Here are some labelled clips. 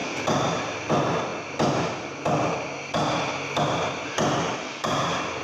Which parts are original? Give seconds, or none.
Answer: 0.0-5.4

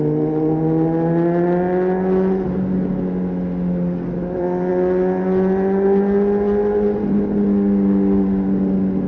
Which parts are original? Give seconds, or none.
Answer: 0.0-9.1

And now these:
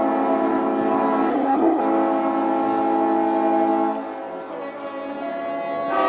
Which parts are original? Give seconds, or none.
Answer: 0.0-1.3; 1.8-6.1